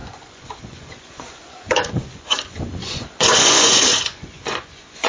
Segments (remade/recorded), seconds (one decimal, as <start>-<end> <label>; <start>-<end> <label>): 0.0-5.1 remade